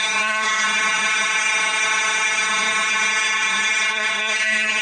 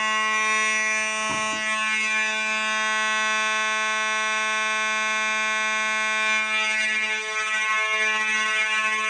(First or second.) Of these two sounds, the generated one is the first